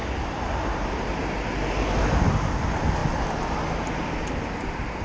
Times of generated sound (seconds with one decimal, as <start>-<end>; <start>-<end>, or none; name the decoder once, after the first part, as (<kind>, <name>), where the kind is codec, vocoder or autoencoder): none